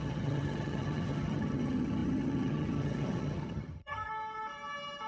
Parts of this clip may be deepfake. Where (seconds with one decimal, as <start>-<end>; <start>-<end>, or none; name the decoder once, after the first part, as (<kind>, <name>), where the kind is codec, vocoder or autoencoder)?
0.0-4.1 (vocoder, HiFi-GAN)